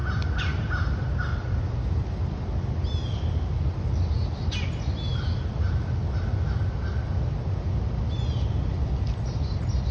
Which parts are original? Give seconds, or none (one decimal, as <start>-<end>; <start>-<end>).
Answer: 0.0-9.9